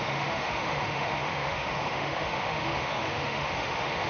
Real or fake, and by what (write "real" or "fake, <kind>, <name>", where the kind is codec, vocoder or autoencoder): fake, autoencoder, DAC-VAE